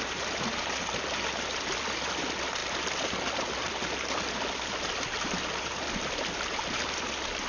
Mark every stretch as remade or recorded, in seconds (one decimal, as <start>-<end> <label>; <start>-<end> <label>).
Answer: 0.0-7.5 recorded